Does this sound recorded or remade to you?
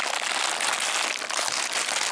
recorded